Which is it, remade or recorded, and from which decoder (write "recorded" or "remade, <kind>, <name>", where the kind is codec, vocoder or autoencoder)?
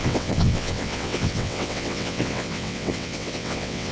remade, vocoder, WaveNeXt